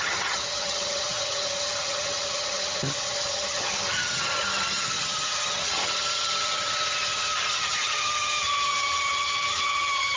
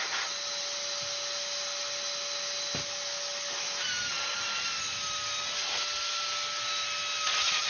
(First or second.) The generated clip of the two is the first